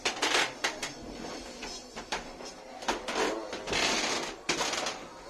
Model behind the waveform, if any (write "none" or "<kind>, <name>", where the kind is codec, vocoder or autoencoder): none